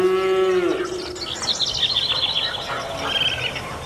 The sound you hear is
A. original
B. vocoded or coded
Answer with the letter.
A